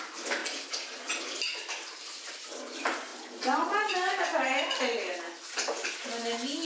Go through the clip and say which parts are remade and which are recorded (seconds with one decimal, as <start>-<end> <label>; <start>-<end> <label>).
0.0-6.6 recorded